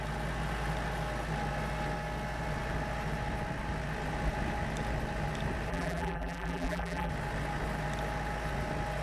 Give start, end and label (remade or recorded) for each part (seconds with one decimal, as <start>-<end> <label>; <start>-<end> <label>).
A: 0.0-5.7 recorded; 5.7-7.1 remade; 7.1-9.0 recorded